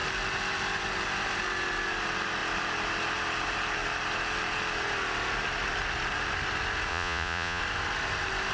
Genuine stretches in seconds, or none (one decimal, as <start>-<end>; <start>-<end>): 0.0-6.9; 7.6-8.5